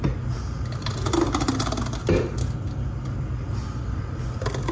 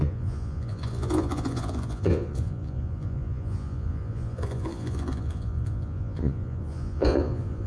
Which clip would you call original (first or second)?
first